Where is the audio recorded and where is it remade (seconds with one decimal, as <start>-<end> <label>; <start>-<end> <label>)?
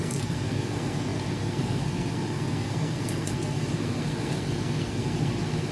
0.0-5.7 remade